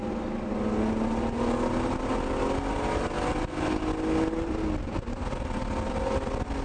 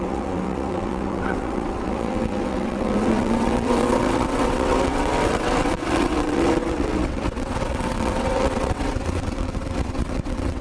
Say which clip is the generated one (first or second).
second